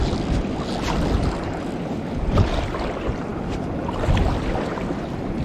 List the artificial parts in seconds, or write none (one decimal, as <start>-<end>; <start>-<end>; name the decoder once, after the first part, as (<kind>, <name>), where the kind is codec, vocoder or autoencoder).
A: none